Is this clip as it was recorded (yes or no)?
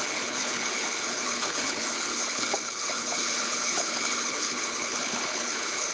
no